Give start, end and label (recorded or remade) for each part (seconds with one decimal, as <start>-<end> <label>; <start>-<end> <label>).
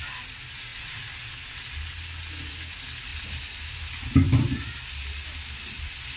0.0-6.2 recorded